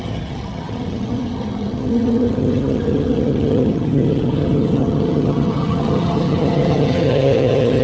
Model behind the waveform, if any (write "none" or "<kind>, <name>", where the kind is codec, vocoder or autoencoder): vocoder, HiFi-GAN